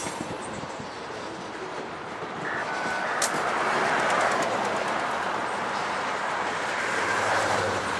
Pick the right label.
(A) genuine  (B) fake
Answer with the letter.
B